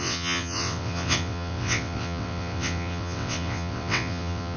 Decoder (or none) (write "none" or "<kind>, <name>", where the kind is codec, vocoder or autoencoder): vocoder, WaveNeXt